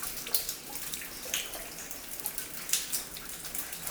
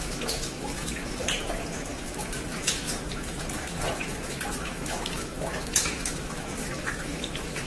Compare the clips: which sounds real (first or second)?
first